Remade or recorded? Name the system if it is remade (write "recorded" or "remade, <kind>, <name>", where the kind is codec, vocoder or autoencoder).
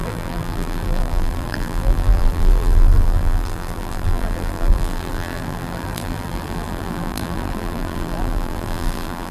remade, vocoder, BigVGAN v2